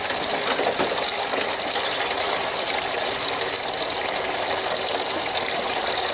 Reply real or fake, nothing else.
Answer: real